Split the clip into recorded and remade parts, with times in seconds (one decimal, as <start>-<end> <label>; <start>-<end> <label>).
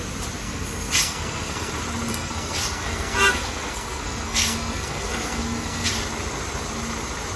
0.0-0.4 recorded; 0.4-1.7 remade; 1.7-2.1 recorded; 2.1-5.9 remade; 5.9-7.4 recorded